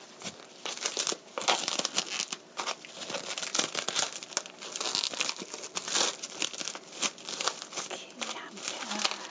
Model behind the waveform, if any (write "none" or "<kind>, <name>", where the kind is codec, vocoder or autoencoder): none